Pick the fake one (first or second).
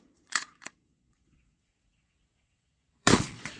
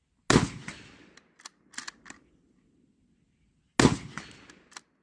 first